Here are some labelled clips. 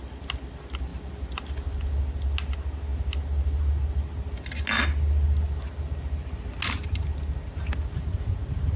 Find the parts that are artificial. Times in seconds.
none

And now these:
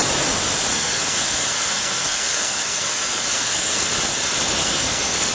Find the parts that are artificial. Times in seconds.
0.7-3.9 (codec, SNAC); 4.6-5.3

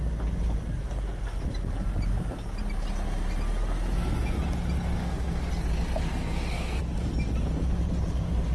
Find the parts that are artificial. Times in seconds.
5.0-5.5 (codec, SNAC); 6.1-6.8

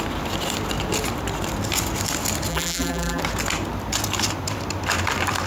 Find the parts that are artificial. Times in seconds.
2.5-3.2 (vocoder, BigVGAN v2)

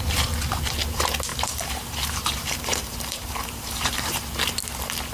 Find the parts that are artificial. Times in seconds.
1.3-4.0 (vocoder, BigVGAN v2)

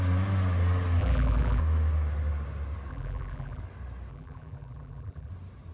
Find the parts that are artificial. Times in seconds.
1.0-1.6 (vocoder, BigVGAN v2); 2.9-3.6; 4.1-5.3